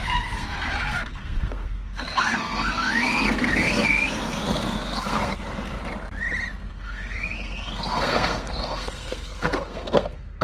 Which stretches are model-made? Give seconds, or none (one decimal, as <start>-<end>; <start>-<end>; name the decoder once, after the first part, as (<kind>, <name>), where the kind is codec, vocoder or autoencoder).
0.0-5.8 (codec, SNAC); 6.7-10.4